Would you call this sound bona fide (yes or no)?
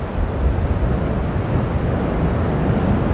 yes